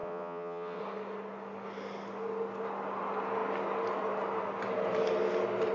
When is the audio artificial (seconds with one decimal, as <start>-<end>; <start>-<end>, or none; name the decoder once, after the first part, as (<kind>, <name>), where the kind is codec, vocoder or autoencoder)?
0.0-0.8 (vocoder, WaveNeXt)

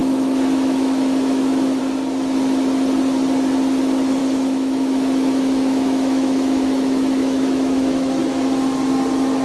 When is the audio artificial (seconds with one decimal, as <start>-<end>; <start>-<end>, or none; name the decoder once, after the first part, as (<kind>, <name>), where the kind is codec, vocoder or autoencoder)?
0.0-1.8 (autoencoder, DAC-VAE); 4.2-8.2

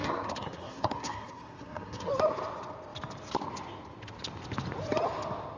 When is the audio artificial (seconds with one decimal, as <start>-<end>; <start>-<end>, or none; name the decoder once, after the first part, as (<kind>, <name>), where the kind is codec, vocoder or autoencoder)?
0.0-2.1 (codec, SNAC)

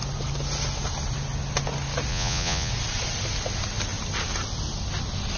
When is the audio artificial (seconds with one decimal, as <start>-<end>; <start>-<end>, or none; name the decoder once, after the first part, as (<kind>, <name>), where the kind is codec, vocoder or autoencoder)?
2.1-2.7 (vocoder, Vocos)

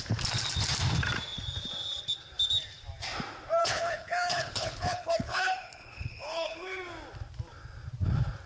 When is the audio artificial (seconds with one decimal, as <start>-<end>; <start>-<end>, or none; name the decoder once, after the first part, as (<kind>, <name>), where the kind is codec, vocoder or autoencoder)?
3.6-6.8 (codec, HILCodec)